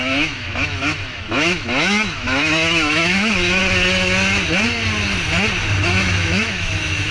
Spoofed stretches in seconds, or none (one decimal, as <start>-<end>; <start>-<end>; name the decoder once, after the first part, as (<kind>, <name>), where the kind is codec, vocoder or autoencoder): 0.0-3.6 (autoencoder, DAC-VAE); 5.8-7.1